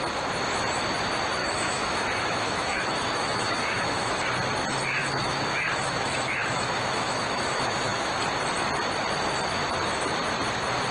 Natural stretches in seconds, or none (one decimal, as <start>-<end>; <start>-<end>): 0.0-1.4; 4.2-5.0; 8.2-10.9